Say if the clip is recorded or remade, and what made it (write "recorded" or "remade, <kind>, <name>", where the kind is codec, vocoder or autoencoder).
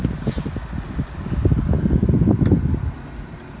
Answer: recorded